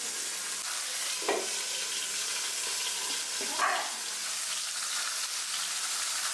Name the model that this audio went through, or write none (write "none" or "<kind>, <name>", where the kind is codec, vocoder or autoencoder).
none